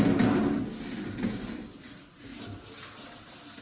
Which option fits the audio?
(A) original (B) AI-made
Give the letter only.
A